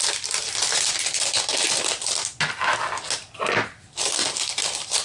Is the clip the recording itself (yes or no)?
yes